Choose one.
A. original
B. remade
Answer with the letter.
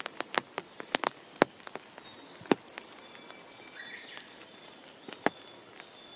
A